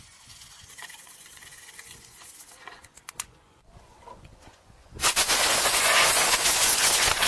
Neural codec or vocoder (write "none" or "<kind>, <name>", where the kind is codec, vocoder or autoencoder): vocoder, Vocos